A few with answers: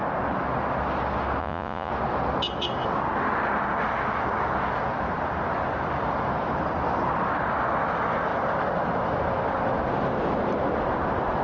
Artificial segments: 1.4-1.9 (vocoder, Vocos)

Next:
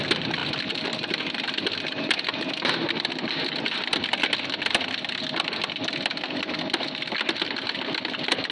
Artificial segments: none

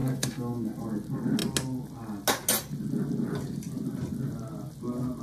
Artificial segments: 0.0-0.7 (autoencoder, DAC-VAE)